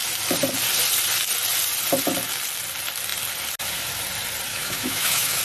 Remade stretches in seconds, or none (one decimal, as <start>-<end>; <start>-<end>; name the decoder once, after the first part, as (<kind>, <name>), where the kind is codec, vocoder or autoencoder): 4.5-5.4 (autoencoder, DAC-VAE)